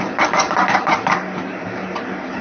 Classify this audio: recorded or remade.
remade